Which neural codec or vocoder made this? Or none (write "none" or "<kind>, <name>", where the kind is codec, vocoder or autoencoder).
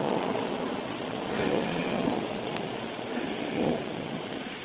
vocoder, Vocos